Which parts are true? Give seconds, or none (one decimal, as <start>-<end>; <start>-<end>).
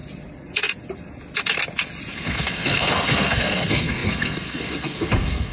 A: 0.0-2.1